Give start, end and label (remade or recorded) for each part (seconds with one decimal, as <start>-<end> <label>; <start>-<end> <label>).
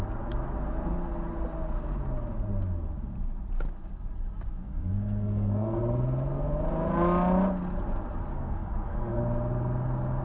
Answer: 0.0-4.6 recorded; 4.6-5.8 remade; 5.8-8.3 recorded; 8.3-9.2 remade; 9.2-10.2 recorded